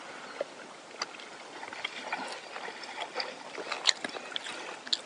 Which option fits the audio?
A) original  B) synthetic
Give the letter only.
A